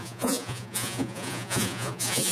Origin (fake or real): fake